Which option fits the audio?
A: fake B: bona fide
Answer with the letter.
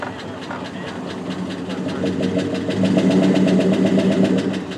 B